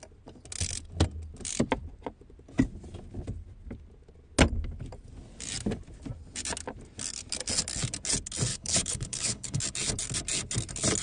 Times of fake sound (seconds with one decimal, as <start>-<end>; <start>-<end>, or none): 8.5-9.6